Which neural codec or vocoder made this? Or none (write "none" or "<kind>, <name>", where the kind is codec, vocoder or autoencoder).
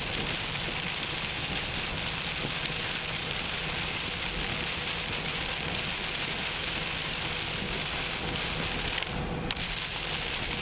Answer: none